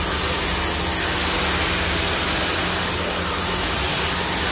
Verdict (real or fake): real